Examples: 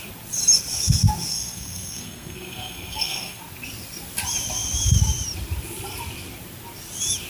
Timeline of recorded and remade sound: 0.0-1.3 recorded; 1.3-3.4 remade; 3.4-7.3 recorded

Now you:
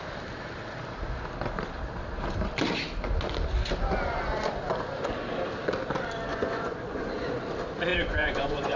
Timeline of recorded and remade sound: 0.0-6.3 recorded; 6.3-7.3 remade; 7.3-7.9 recorded; 7.9-8.8 remade

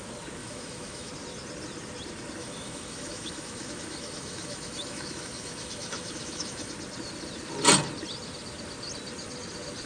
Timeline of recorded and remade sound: 0.0-0.4 recorded; 0.4-1.1 remade; 1.1-2.4 recorded; 2.4-6.7 remade; 6.7-9.9 recorded

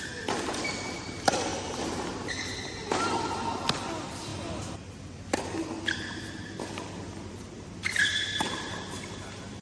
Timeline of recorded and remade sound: 0.0-9.6 recorded

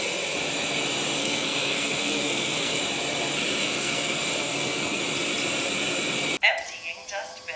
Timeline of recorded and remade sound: 0.0-1.2 recorded; 1.2-2.8 remade; 2.8-3.6 recorded; 3.6-5.0 remade; 5.0-7.6 recorded

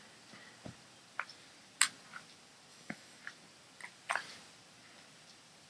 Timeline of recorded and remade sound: 0.0-2.7 recorded; 2.7-3.2 remade; 3.2-5.7 recorded

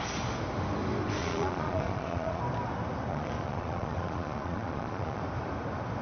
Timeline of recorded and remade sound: 0.0-1.2 recorded; 1.2-2.4 remade; 2.4-3.1 recorded; 3.1-5.2 remade; 5.2-6.0 recorded

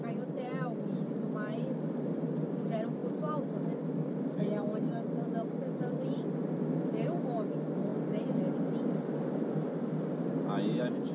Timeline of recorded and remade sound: 0.0-11.1 recorded